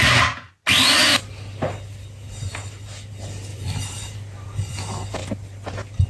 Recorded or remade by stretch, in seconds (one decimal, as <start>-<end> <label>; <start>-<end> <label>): 0.0-3.5 recorded; 3.5-4.8 remade; 4.8-6.1 recorded